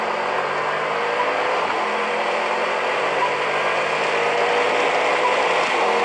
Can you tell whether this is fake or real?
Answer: real